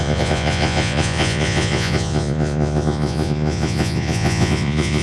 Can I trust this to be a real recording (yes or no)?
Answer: no